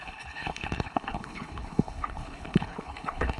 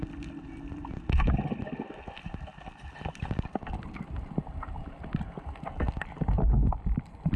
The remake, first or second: first